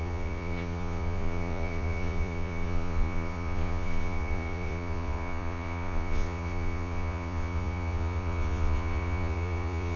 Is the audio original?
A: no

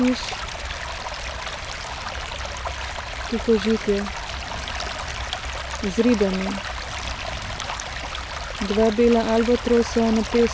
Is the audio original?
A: yes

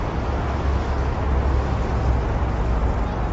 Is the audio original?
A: yes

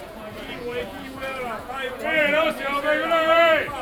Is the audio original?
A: no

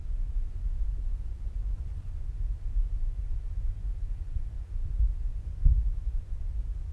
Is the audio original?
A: no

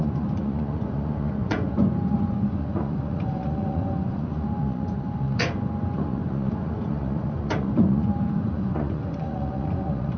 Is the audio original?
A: no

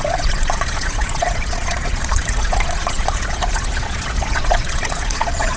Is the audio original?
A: no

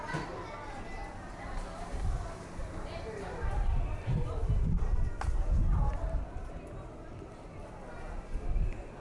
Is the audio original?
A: yes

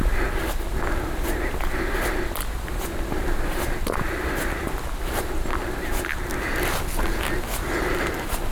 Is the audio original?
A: yes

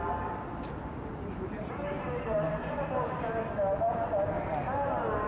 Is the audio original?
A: yes